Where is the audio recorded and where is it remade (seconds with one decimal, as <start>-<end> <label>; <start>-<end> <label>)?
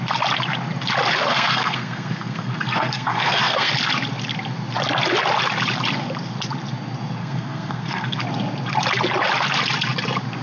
0.0-1.3 recorded; 1.3-3.7 remade; 3.7-7.2 recorded; 7.2-8.2 remade; 8.2-10.4 recorded